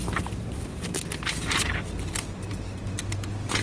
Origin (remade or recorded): recorded